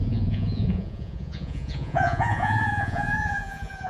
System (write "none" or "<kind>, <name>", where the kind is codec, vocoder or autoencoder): vocoder, Vocos